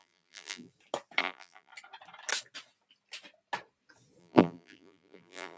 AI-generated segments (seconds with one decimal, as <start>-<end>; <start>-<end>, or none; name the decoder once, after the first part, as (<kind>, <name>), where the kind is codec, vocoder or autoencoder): 0.0-0.7 (vocoder, BigVGAN v2); 1.2-1.7; 4.2-5.6